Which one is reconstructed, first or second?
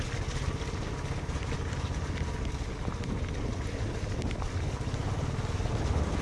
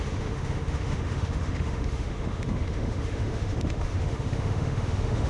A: second